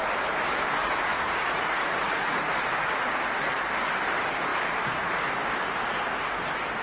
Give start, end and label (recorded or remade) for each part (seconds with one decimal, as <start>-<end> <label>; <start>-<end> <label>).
0.0-1.1 recorded; 1.1-2.4 remade; 2.4-6.8 recorded